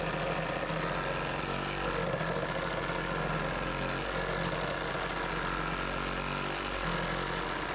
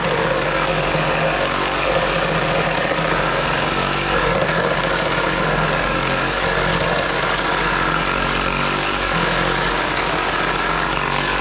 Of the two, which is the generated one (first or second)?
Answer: second